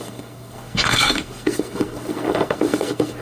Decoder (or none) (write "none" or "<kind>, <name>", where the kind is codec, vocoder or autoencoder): codec, SNAC